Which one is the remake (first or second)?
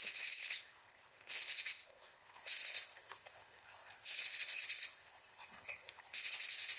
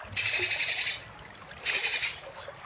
first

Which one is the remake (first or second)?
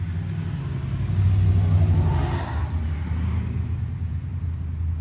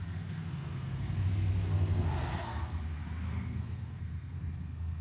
second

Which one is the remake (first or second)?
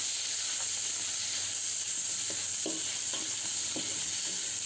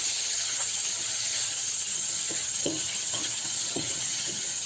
second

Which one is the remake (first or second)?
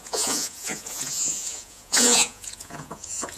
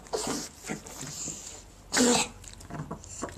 first